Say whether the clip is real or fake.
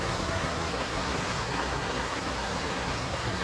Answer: fake